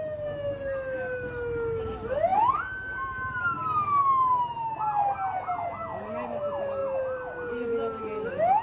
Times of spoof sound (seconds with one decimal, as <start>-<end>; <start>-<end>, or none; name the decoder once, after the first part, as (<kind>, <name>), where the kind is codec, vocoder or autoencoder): none